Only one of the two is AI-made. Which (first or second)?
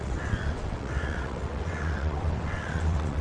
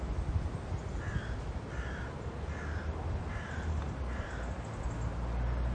first